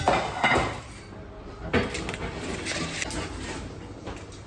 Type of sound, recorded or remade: recorded